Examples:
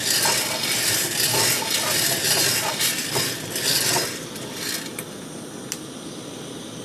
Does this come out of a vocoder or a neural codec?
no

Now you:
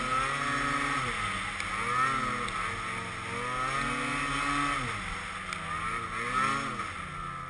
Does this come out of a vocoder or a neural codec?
no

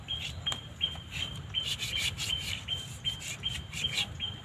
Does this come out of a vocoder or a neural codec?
yes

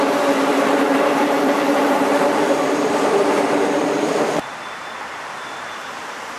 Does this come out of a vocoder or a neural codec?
yes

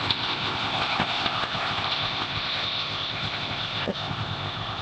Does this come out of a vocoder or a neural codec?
yes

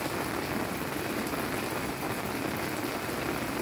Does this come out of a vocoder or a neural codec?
no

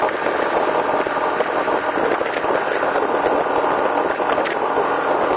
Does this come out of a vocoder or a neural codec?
no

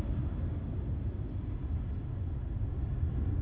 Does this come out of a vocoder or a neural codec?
no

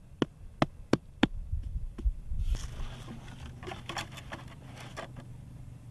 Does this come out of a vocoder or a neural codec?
no